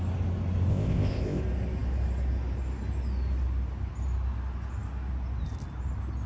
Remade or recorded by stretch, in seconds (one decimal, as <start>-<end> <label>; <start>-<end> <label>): 0.0-0.7 recorded; 0.7-1.4 remade; 1.4-6.3 recorded